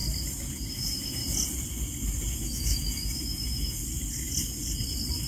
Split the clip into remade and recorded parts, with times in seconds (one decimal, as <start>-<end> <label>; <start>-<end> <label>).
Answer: 0.0-0.7 recorded; 0.7-1.2 remade; 1.2-2.3 recorded; 2.3-3.8 remade; 3.8-5.3 recorded